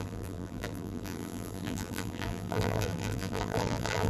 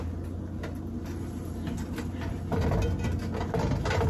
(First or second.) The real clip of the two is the second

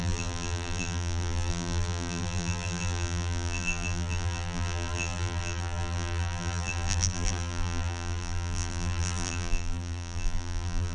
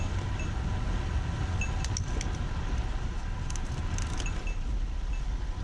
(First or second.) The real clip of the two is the second